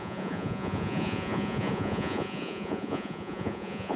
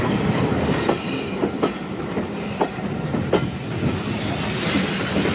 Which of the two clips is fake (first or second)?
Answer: first